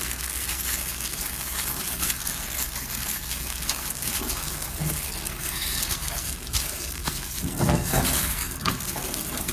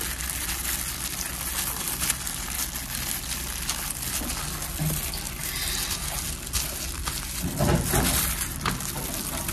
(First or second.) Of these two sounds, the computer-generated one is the first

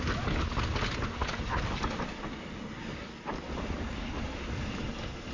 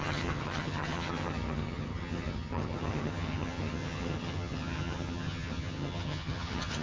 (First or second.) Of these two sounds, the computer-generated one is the second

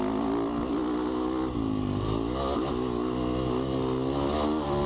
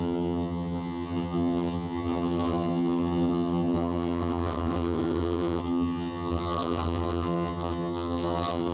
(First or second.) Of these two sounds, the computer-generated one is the second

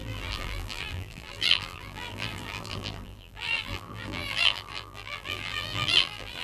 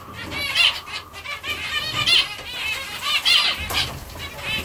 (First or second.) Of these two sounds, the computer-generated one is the first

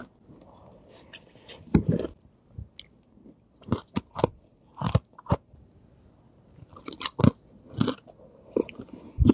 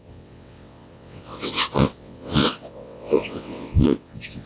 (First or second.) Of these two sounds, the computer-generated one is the second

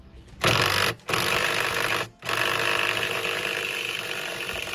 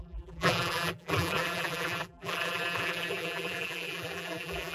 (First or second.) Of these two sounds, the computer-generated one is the second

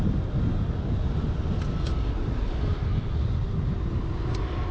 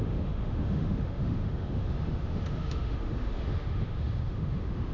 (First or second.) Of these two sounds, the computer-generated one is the second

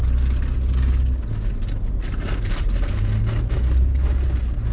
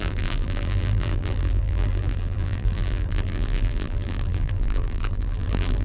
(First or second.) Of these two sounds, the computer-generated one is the second